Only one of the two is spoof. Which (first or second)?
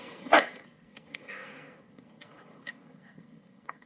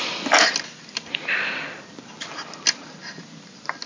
first